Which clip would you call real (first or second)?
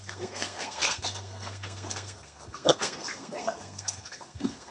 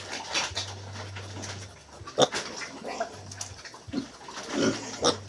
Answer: second